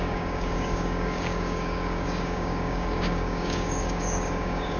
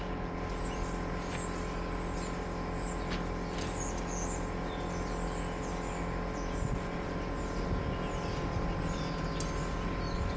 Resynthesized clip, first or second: first